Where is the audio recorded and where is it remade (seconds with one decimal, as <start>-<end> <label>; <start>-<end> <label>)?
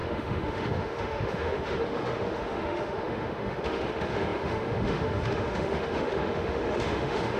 0.0-7.4 remade